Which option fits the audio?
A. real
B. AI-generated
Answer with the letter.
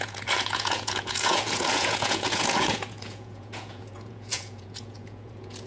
B